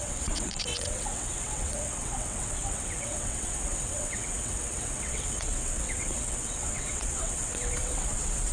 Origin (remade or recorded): remade